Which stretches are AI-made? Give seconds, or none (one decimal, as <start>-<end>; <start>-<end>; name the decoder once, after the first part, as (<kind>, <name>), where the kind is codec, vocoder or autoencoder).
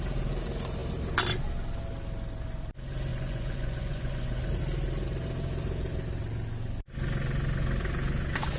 3.1-4.4 (vocoder, Vocos)